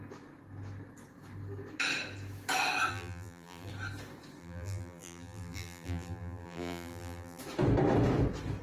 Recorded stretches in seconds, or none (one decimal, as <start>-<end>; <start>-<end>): 0.0-2.9; 3.7-4.4; 7.4-8.6